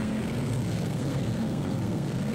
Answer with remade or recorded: remade